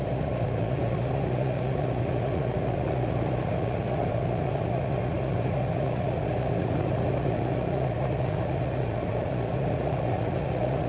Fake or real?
fake